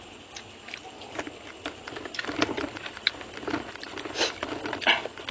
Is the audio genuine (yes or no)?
yes